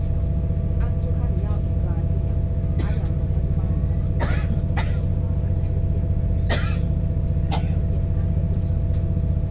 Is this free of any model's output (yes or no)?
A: yes